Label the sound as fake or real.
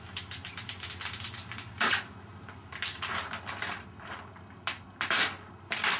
real